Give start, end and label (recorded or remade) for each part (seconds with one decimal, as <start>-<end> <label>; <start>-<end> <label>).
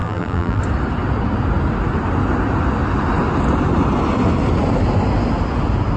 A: 0.0-0.6 remade; 0.6-6.0 recorded